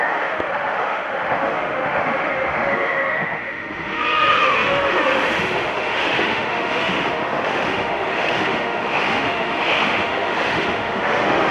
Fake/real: fake